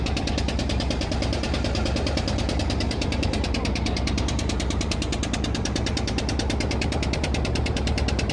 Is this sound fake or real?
fake